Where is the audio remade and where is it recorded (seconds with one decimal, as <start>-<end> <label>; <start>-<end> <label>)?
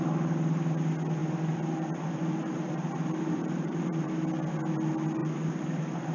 0.0-1.2 recorded; 1.2-4.1 remade; 4.1-5.2 recorded; 5.2-6.1 remade